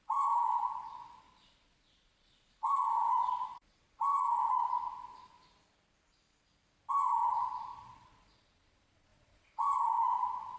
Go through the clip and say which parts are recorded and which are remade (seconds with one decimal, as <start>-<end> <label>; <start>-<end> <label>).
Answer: 0.0-4.1 remade; 4.1-6.9 recorded; 6.9-10.6 remade